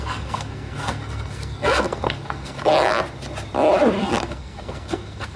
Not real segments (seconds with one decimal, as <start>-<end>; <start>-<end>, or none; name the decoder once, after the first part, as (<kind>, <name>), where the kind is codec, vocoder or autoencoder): 0.0-2.7 (codec, SNAC); 4.0-5.4

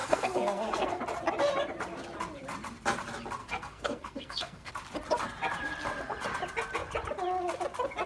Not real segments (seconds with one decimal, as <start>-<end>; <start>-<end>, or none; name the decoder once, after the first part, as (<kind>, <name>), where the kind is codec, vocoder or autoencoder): 0.0-1.0 (codec, SNAC); 3.4-4.7

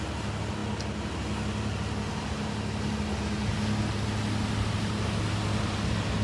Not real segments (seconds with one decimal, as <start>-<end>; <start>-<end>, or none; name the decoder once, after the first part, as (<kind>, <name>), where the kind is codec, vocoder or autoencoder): none

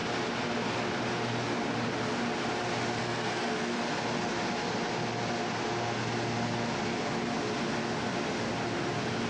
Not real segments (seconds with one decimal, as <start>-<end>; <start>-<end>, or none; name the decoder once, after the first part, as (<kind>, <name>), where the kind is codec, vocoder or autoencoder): 3.0-3.8 (codec, SNAC)

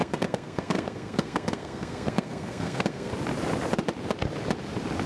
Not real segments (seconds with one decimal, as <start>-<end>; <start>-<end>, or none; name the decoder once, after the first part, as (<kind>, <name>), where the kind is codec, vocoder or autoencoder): 0.0-3.1 (codec, SNAC)

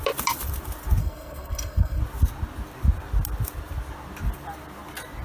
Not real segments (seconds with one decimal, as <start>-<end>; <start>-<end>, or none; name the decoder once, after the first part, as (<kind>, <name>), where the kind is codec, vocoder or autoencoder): 1.0-2.0 (codec, SNAC)

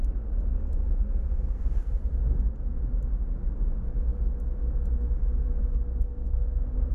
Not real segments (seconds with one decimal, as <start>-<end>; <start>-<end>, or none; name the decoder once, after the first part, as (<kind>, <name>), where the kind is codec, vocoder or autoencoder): 0.5-2.0 (codec, SNAC); 5.9-6.9